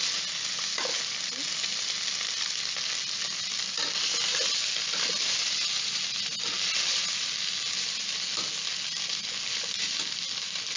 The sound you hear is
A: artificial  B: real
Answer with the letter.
B